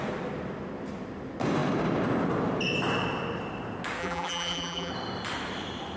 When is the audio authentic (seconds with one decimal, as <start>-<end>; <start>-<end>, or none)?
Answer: 0.0-4.0; 4.9-6.0